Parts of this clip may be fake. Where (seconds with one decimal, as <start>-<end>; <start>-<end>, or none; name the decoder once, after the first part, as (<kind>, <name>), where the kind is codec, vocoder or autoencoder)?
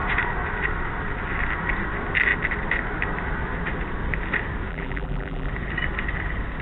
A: 4.7-5.5 (vocoder, BigVGAN v2)